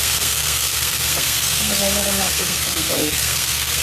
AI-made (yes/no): yes